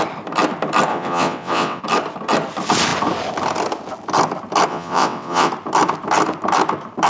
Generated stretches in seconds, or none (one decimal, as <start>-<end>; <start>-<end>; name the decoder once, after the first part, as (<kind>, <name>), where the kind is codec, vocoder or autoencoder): 0.9-1.8 (vocoder, WaveNeXt); 4.7-5.5